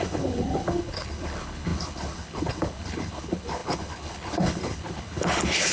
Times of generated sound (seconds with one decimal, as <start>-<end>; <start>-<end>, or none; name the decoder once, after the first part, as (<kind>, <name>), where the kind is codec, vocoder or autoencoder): 0.0-5.7 (codec, HILCodec)